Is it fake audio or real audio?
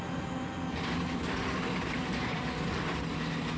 real